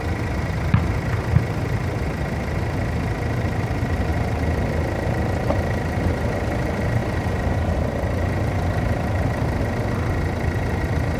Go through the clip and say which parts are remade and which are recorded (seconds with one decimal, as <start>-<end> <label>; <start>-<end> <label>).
0.0-7.0 recorded; 7.0-9.6 remade; 9.6-11.2 recorded